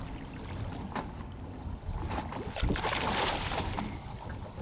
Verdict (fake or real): real